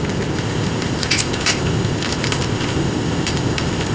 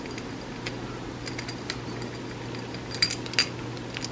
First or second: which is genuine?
second